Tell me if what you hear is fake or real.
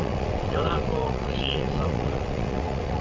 fake